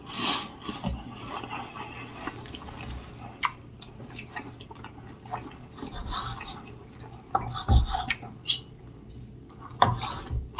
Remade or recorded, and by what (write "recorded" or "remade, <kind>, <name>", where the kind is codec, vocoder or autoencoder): recorded